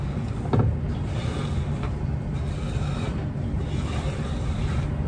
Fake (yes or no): no